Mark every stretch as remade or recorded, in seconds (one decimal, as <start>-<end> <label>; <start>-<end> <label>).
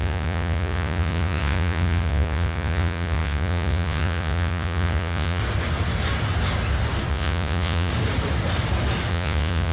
0.0-5.4 remade; 5.4-7.1 recorded; 7.1-7.9 remade; 7.9-9.1 recorded; 9.1-9.7 remade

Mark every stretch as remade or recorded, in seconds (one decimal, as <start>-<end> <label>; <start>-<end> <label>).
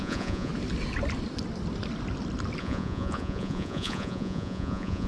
0.0-0.5 remade; 0.5-2.6 recorded; 2.6-5.1 remade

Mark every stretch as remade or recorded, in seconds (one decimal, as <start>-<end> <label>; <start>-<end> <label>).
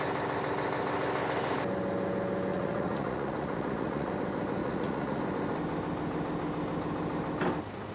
0.0-2.5 recorded; 2.5-4.1 remade; 4.1-4.6 recorded; 4.6-5.2 remade; 5.2-7.9 recorded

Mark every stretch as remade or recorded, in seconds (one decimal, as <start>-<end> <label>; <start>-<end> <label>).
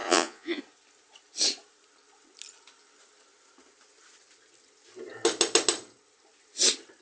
0.0-0.6 remade; 0.6-7.0 recorded